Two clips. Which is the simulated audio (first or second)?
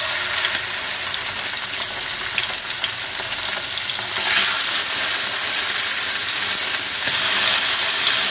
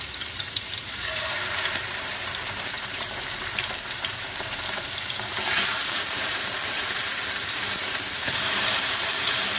second